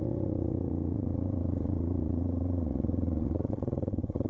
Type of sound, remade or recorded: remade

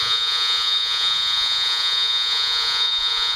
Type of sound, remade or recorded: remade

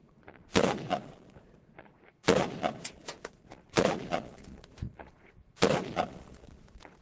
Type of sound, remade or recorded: remade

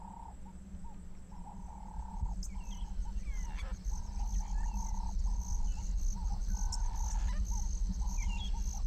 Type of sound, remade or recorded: recorded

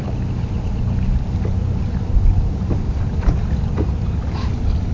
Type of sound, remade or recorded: recorded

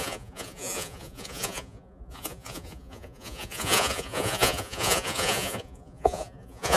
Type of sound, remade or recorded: remade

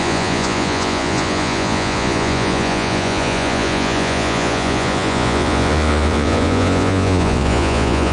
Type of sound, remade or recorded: remade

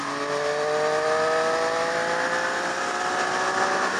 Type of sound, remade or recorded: recorded